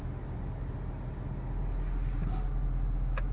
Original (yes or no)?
yes